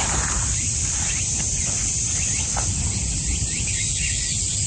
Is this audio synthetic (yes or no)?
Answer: no